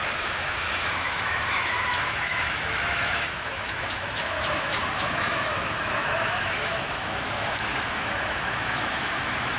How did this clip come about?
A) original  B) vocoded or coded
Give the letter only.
B